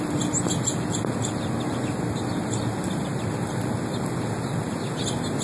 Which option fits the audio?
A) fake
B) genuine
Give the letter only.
B